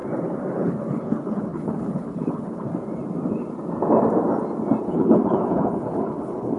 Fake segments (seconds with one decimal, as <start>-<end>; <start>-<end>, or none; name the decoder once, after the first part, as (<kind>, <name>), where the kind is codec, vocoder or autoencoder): 0.5-2.7 (codec, HILCodec); 4.8-6.6